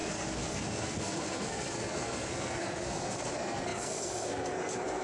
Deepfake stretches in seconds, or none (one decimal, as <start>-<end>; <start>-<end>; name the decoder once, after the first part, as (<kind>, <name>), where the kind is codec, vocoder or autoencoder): 0.0-5.0 (codec, SNAC)